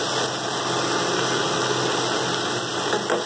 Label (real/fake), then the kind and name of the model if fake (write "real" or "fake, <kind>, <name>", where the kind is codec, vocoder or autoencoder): real